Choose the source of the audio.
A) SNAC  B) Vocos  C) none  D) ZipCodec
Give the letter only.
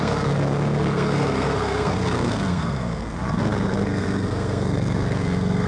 A